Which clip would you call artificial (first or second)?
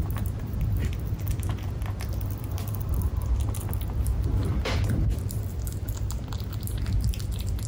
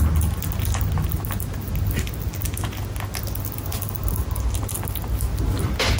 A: first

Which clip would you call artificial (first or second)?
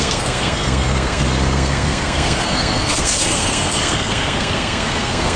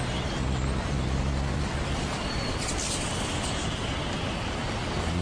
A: first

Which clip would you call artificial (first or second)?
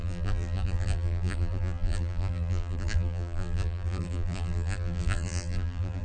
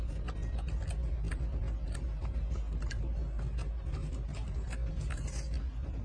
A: first